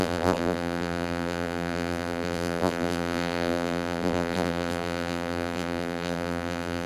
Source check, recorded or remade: remade